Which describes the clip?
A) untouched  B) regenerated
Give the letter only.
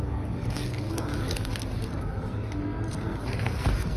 B